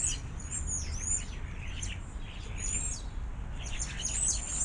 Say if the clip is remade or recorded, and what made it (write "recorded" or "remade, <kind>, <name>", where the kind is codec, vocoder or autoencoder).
recorded